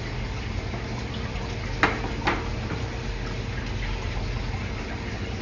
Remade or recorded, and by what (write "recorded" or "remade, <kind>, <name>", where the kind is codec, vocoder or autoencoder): recorded